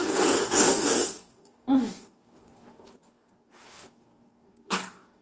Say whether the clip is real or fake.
fake